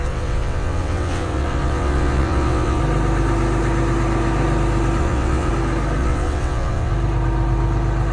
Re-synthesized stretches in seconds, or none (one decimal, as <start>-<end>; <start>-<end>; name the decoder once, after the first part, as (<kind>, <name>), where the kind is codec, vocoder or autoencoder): 0.0-2.8 (vocoder, WaveNeXt); 5.0-5.5; 6.0-6.9